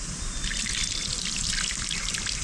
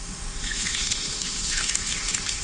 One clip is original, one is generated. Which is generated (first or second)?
second